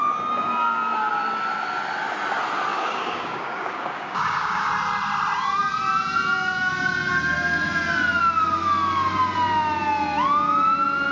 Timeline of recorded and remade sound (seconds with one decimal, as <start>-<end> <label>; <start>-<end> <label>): 0.0-2.7 recorded; 2.7-4.7 remade; 4.7-11.1 recorded